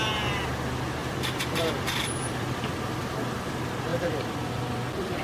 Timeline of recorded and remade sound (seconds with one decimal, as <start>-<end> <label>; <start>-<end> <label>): 0.0-1.0 recorded; 1.0-2.7 remade; 2.7-3.9 recorded; 3.9-4.6 remade; 4.6-5.2 recorded